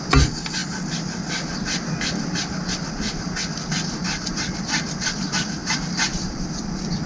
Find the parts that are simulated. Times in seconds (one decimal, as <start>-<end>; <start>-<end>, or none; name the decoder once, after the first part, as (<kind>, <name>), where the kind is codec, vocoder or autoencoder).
none